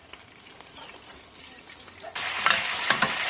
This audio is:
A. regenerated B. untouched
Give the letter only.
B